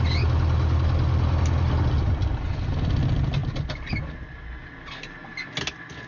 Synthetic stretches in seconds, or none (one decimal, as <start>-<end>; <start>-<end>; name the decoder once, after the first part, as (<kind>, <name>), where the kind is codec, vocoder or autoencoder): none